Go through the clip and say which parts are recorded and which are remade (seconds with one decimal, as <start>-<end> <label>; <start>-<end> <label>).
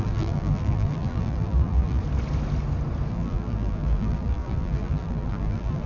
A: 0.0-2.0 remade; 2.0-3.1 recorded; 3.1-5.9 remade